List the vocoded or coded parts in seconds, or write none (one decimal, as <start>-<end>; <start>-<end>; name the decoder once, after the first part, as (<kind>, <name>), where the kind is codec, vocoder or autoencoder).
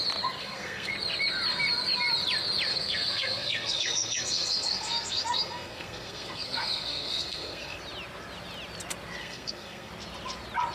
0.4-0.9 (codec, SNAC); 2.7-7.8; 9.2-9.9